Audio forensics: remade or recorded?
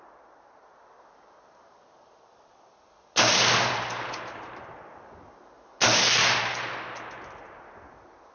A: recorded